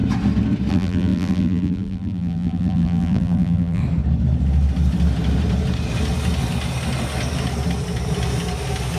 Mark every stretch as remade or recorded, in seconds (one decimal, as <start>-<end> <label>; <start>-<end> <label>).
0.0-0.7 recorded; 0.7-3.8 remade; 3.8-9.0 recorded